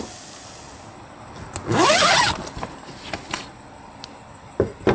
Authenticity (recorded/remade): recorded